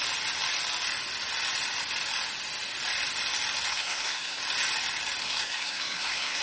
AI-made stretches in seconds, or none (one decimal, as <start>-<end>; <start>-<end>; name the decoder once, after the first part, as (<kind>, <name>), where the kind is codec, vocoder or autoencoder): 3.7-4.4 (codec, SNAC); 5.2-6.4